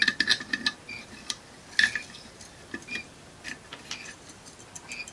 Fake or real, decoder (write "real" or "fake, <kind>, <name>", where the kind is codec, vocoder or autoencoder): real